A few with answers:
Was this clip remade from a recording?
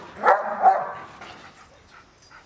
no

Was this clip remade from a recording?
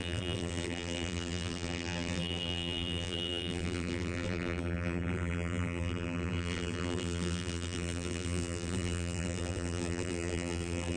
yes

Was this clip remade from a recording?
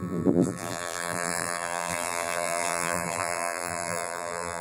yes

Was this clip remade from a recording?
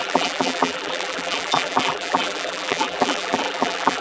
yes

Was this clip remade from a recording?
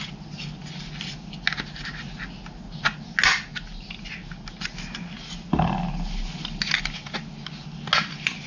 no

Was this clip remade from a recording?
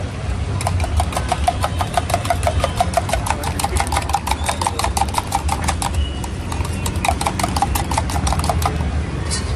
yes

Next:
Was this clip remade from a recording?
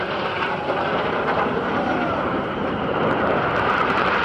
yes